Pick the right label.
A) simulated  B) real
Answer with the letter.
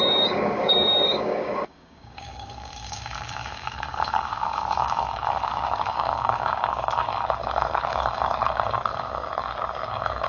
A